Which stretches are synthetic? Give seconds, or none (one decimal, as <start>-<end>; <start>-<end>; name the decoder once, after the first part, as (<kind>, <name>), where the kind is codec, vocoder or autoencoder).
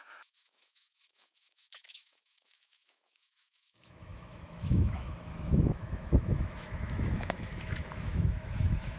0.0-9.0 (autoencoder, DAC-VAE)